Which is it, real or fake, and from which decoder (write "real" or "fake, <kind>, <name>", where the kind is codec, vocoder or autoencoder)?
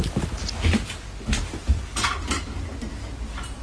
real